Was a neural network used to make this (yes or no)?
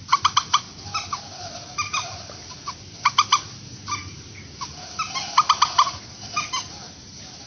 no